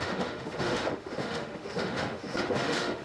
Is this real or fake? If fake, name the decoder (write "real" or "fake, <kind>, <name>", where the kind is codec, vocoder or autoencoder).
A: fake, autoencoder, DAC-VAE